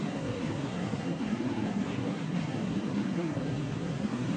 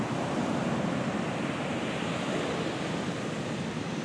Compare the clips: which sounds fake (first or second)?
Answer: first